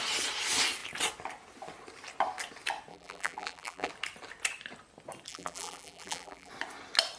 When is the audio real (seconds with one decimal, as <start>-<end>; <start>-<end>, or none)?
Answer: 0.0-2.9; 3.9-5.3; 6.5-7.2